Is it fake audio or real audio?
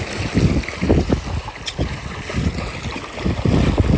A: real